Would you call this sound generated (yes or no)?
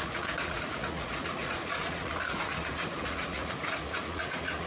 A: yes